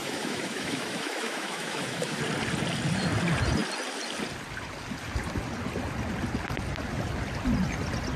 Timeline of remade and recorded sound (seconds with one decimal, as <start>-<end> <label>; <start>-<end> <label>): 0.0-2.2 remade; 2.2-8.2 recorded